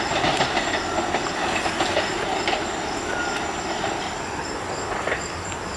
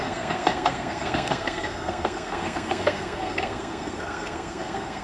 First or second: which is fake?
second